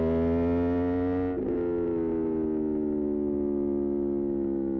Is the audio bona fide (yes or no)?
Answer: yes